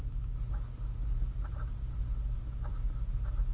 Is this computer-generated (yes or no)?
no